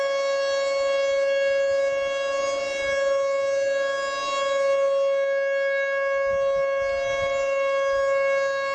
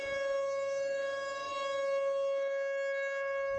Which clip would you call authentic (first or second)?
first